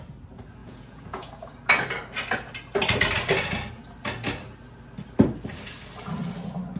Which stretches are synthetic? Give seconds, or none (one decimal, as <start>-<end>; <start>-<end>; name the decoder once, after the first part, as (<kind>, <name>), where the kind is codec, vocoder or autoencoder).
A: 0.6-1.3 (vocoder, Vocos)